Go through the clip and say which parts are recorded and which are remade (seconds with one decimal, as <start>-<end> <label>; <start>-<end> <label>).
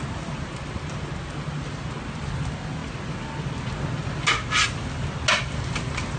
0.0-6.2 recorded